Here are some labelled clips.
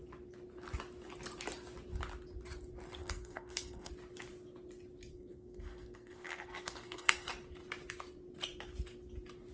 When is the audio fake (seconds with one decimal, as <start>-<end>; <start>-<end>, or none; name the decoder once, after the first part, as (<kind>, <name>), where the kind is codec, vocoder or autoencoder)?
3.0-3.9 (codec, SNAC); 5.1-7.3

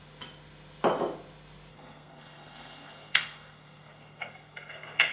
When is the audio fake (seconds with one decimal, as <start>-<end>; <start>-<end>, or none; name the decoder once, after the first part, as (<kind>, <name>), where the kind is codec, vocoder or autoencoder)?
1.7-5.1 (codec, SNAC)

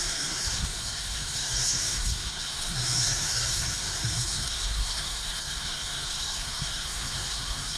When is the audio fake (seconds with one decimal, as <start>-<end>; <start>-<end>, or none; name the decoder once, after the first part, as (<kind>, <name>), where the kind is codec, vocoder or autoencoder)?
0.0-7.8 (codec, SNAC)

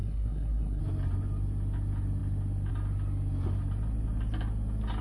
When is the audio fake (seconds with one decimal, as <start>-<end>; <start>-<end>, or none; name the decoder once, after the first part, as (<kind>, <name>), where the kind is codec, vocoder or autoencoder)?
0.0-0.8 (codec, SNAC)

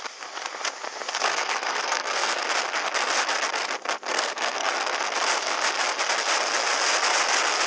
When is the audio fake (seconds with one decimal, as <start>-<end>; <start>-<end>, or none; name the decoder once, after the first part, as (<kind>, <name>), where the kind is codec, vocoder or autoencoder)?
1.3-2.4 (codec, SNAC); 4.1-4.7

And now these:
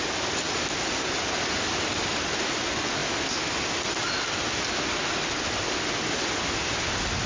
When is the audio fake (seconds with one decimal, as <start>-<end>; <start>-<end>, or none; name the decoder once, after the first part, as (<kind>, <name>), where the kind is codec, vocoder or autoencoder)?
none

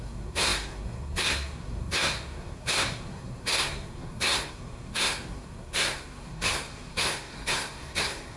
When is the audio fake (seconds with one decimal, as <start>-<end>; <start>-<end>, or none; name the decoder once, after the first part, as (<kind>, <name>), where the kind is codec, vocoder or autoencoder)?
0.0-8.4 (codec, SNAC)

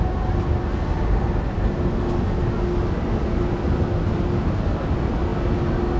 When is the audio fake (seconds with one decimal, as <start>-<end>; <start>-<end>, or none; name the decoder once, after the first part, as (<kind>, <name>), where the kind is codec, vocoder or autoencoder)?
none